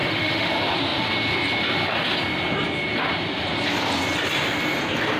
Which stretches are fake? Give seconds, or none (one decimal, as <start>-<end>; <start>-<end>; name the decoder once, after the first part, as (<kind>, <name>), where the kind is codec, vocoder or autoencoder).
0.0-0.5 (autoencoder, DAC-VAE)